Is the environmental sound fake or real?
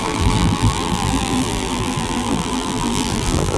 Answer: fake